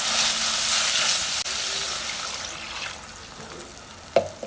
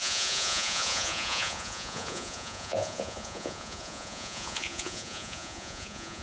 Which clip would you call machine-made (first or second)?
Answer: second